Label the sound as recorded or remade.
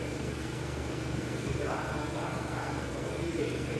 remade